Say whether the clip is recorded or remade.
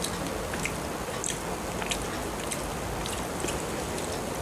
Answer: recorded